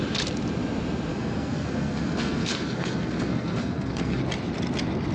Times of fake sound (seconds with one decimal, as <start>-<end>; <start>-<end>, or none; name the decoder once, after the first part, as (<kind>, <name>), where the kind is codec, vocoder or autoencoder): 1.1-4.2 (codec, SNAC)